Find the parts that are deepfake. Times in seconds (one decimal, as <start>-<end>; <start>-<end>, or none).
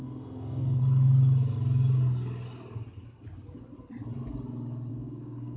0.0-0.8; 4.9-5.6